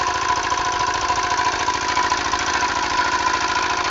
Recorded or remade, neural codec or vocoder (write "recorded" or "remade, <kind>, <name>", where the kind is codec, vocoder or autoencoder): recorded